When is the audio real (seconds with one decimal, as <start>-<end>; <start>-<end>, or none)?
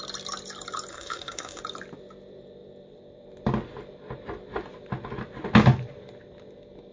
0.0-0.9; 1.6-6.9